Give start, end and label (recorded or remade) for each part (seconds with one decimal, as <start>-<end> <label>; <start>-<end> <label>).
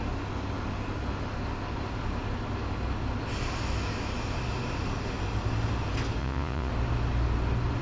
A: 0.0-6.2 recorded; 6.2-6.7 remade; 6.7-7.8 recorded